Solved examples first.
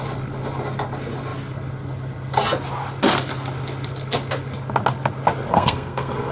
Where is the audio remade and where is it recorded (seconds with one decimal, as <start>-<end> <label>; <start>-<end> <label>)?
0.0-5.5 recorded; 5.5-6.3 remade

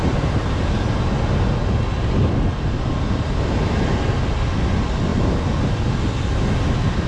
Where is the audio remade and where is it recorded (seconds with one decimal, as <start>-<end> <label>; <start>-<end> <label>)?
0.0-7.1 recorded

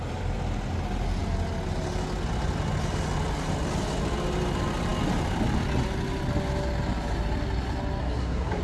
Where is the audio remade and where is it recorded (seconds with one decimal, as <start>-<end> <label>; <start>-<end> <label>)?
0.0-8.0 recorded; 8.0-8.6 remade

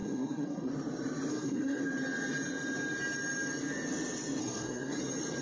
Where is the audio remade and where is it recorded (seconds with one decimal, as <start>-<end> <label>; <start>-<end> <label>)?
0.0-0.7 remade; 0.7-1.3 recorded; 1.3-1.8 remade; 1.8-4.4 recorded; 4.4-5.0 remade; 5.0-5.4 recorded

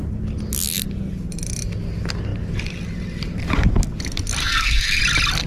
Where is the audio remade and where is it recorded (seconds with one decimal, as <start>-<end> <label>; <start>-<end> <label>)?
0.0-4.4 recorded; 4.4-5.0 remade; 5.0-5.5 recorded

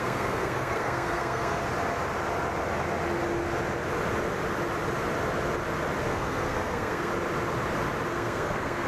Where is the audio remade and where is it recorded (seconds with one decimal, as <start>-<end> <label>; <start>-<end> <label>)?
0.0-1.6 remade; 1.6-6.0 recorded; 6.0-7.1 remade; 7.1-8.1 recorded; 8.1-8.9 remade